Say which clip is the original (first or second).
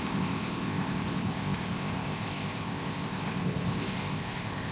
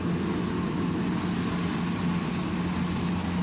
second